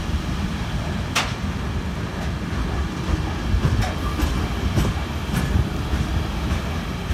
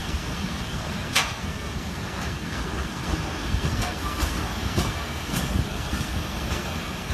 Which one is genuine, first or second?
first